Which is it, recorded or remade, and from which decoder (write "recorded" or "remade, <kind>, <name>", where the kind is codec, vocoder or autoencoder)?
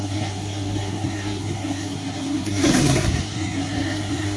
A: remade, codec, SNAC